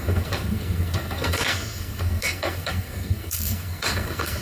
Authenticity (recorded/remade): remade